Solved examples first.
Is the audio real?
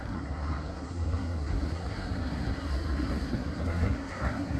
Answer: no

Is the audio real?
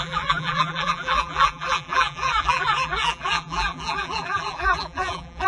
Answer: no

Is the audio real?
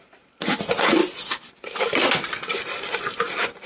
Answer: yes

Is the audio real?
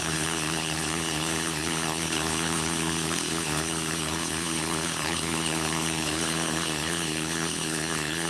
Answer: no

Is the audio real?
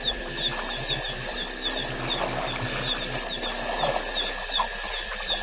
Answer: yes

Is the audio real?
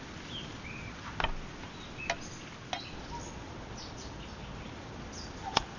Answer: yes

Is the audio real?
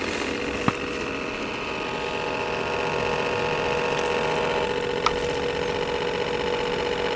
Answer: yes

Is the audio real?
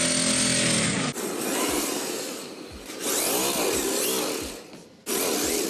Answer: yes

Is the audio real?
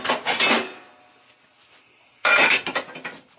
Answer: yes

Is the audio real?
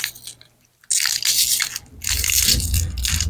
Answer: yes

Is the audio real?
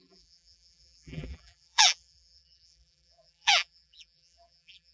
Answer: no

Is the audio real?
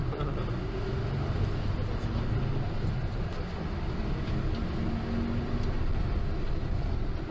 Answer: yes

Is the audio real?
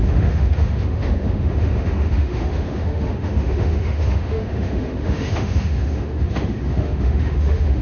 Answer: no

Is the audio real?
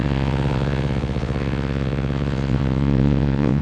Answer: no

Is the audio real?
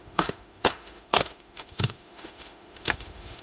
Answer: no